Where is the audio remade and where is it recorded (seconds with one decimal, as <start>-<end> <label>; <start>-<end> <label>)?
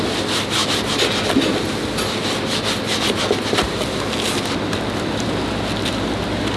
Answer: 0.0-6.6 recorded